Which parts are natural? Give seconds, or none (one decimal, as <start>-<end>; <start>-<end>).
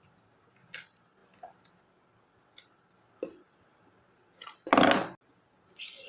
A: 0.0-6.1